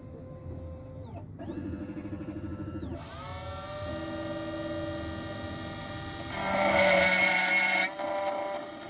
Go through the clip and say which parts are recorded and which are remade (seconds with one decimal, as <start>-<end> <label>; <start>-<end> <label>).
0.0-5.8 recorded; 5.8-7.5 remade; 7.5-8.9 recorded